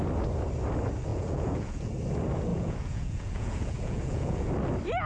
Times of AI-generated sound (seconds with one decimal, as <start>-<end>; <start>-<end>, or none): 1.1-1.9; 2.5-4.5